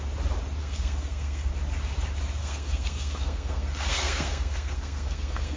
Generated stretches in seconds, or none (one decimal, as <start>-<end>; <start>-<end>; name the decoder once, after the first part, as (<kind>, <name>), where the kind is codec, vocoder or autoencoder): 0.6-1.5 (codec, SNAC); 2.4-5.6